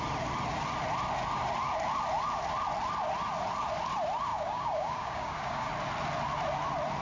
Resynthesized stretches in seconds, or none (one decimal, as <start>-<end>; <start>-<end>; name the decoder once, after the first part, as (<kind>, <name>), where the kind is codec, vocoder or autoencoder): 4.3-5.7 (codec, DAC)